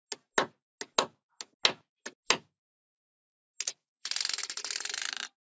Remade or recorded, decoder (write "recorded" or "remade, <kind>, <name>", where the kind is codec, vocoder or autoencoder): recorded